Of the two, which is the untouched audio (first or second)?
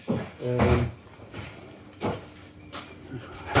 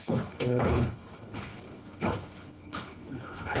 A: first